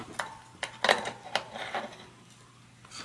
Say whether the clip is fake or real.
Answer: real